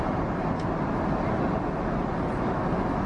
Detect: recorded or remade recorded